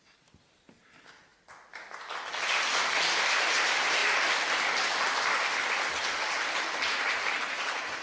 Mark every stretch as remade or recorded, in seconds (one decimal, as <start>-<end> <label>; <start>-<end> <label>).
0.0-1.3 remade; 1.3-3.5 recorded; 3.5-4.0 remade; 4.0-7.3 recorded; 7.3-8.0 remade